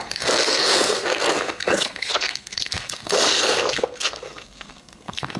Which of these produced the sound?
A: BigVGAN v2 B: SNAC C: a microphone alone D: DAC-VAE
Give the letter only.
B